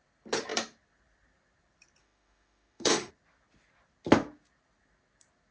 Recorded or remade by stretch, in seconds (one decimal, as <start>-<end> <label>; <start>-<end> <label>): 0.0-2.0 recorded; 2.0-3.1 remade; 3.1-5.5 recorded